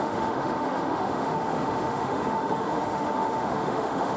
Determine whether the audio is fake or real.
fake